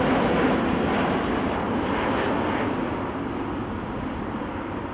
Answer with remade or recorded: recorded